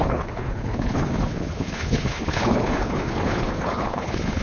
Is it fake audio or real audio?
fake